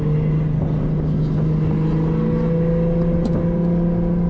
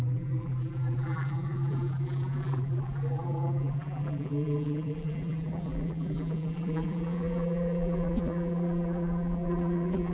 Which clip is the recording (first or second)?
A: first